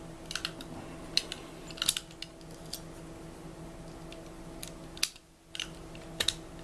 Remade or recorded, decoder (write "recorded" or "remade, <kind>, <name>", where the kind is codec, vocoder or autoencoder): recorded